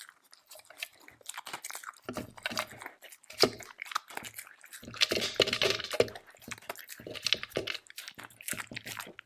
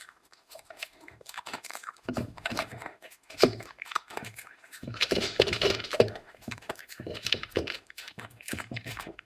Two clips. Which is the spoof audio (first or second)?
second